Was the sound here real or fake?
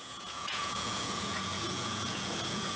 fake